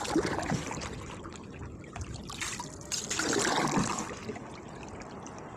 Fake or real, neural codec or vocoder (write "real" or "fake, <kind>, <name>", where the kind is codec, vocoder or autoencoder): real